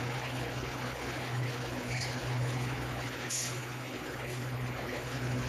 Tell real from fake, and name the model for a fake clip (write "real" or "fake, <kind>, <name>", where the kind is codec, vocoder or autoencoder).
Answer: fake, codec, HILCodec